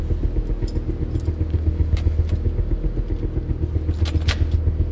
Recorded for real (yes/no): yes